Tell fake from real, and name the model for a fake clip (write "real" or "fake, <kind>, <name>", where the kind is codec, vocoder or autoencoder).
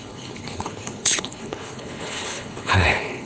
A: fake, codec, HILCodec